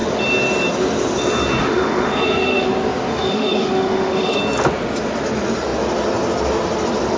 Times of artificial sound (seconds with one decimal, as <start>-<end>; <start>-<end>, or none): 1.6-2.7; 3.1-4.4